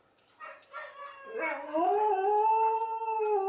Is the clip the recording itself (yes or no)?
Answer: yes